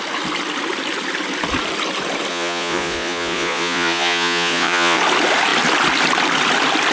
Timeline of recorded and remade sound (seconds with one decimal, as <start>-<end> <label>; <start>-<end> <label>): 0.0-2.3 recorded; 2.3-5.0 remade; 5.0-6.9 recorded